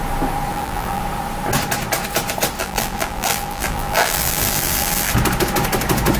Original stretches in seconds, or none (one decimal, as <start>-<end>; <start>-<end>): 0.0-0.5; 1.0-2.6; 5.1-6.2